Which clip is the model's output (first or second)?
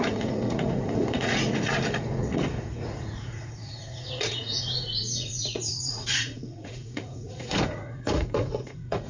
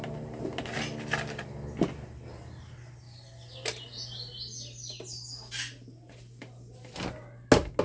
first